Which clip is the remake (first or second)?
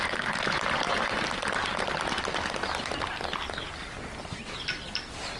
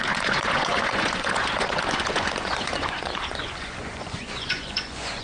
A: second